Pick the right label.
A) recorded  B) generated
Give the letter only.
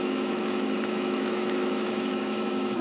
B